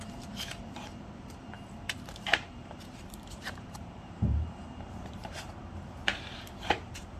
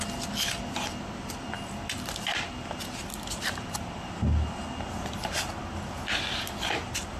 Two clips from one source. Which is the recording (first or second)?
second